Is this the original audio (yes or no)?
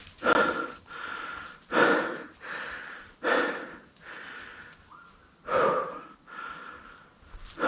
yes